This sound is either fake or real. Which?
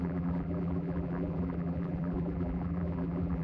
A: fake